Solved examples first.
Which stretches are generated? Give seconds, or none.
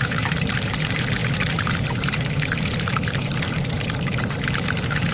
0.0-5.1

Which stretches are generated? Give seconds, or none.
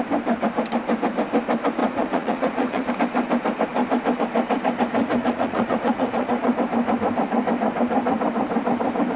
1.8-2.9; 5.0-6.5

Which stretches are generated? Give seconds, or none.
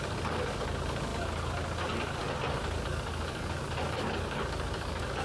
0.0-5.2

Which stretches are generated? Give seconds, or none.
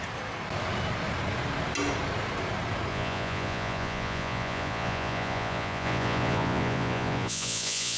2.9-8.0